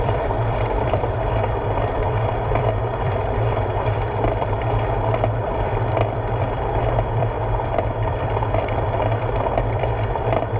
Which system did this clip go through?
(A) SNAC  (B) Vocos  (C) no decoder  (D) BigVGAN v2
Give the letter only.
D